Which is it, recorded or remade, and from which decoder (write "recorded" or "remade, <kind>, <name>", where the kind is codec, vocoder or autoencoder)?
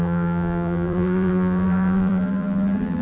remade, vocoder, BigVGAN v2